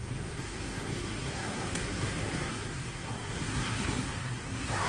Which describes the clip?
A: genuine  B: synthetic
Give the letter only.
B